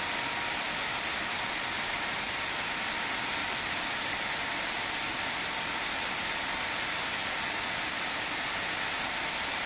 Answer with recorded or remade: recorded